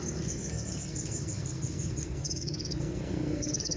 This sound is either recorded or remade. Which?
remade